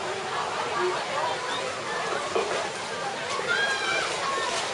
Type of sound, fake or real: real